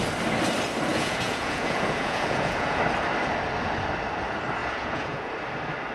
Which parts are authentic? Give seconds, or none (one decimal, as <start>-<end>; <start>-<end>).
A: 0.0-0.9; 2.8-4.6; 5.3-5.9

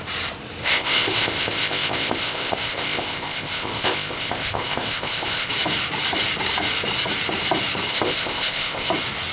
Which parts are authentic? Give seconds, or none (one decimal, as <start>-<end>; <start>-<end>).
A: 0.0-0.6; 5.5-7.9; 8.9-9.3

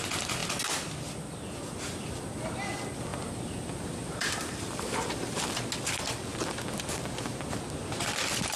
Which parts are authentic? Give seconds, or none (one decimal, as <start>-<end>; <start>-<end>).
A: 0.0-3.1; 5.6-8.6

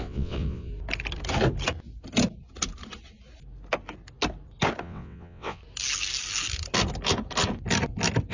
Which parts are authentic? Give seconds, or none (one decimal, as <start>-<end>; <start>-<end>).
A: 0.7-4.8; 5.6-8.3

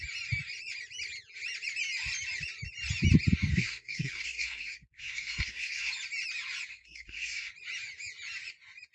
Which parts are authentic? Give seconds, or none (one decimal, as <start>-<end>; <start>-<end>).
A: 0.0-3.5; 5.9-6.7; 7.5-8.9